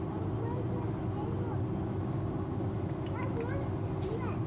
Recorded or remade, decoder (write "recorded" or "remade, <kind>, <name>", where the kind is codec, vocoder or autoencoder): recorded